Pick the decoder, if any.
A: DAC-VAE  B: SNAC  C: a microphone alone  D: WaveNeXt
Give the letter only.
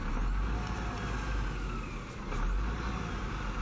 C